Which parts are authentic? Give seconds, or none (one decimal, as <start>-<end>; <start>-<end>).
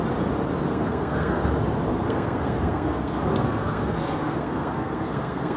0.0-0.7; 1.5-1.9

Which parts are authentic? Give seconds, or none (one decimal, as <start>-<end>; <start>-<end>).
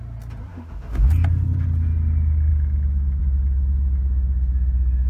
0.0-0.5; 1.1-5.1